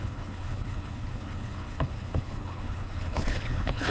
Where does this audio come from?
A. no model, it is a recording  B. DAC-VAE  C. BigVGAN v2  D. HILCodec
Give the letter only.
D